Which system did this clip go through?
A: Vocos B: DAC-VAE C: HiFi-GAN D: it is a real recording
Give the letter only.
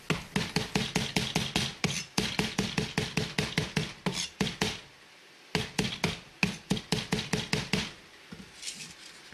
D